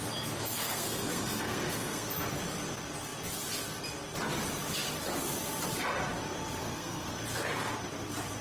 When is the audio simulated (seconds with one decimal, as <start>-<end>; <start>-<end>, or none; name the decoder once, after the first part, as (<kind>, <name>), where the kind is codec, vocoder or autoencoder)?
0.4-2.1 (codec, SNAC); 6.6-7.1